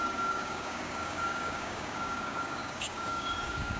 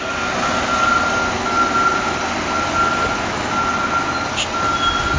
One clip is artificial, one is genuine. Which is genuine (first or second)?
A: second